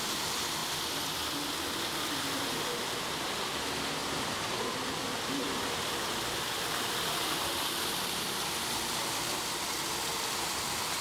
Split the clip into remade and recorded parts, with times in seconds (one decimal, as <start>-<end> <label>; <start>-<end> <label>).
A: 0.0-0.6 remade; 0.6-2.8 recorded; 2.8-11.0 remade